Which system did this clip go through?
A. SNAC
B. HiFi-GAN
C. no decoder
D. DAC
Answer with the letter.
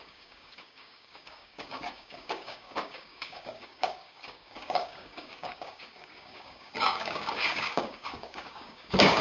D